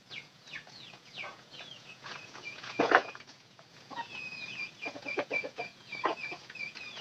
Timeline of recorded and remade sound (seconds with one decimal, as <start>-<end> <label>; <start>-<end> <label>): 0.0-7.0 remade